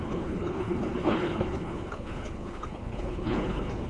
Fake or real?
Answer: fake